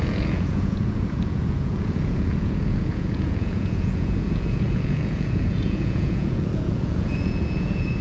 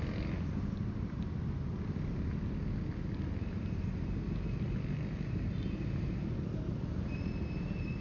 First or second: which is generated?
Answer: first